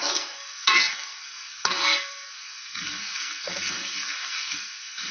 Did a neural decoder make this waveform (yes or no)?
yes